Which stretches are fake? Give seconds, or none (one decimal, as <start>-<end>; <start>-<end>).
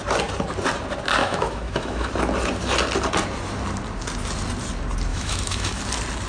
1.2-2.1; 5.1-5.8